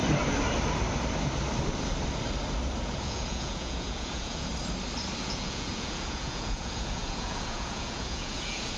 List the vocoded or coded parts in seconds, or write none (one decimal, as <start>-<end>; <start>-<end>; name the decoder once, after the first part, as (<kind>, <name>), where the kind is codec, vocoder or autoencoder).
2.8-4.5 (vocoder, Vocos); 5.2-8.8